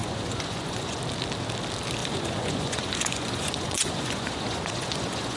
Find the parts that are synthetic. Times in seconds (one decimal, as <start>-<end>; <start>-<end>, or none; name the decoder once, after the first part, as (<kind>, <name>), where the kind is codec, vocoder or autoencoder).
0.0-1.0 (vocoder, Vocos); 2.0-5.4